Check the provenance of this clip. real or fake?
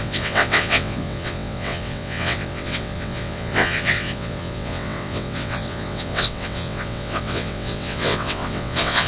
fake